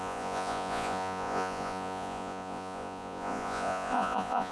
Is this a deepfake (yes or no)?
yes